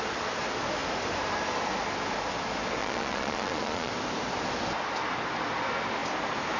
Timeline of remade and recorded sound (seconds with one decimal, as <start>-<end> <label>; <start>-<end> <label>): 0.0-2.8 recorded; 2.8-3.9 remade; 3.9-6.6 recorded